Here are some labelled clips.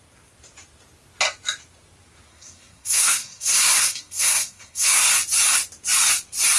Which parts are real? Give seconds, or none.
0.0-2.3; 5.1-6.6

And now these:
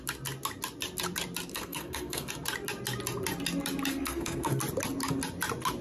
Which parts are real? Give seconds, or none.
0.0-1.5; 2.3-3.9; 4.6-5.8

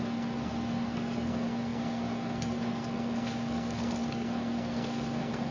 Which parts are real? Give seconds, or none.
none

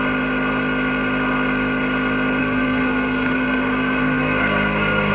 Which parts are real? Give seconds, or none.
0.0-2.4

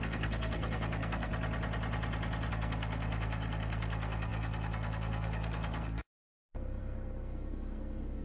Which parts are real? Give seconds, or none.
1.3-2.5

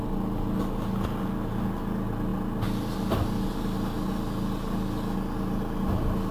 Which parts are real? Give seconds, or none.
0.0-6.3

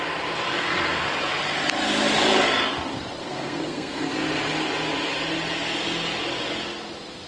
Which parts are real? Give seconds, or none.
0.0-3.2; 4.1-7.3